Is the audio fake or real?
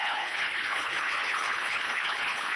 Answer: fake